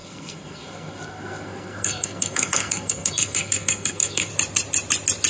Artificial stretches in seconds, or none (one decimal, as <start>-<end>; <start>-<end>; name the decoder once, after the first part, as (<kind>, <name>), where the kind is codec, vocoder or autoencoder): 0.0-4.3 (codec, SNAC)